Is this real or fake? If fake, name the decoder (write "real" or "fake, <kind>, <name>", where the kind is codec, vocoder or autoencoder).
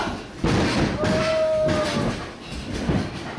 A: real